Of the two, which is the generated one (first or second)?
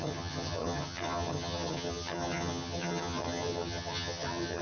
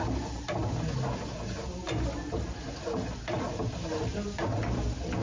first